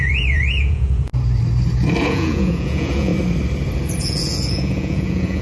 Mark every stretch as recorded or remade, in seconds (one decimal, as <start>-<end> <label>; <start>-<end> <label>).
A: 0.0-1.1 remade; 1.1-2.0 recorded; 2.0-3.1 remade; 3.1-4.0 recorded; 4.0-5.4 remade